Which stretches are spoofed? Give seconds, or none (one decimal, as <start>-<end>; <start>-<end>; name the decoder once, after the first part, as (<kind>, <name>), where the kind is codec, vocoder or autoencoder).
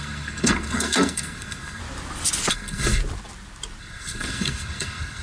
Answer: 0.0-1.8 (codec, SNAC); 2.5-3.0; 3.8-5.2